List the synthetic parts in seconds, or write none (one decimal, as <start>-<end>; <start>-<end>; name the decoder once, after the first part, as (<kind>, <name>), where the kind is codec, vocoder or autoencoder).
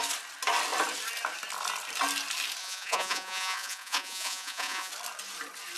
2.6-4.9 (vocoder, Vocos)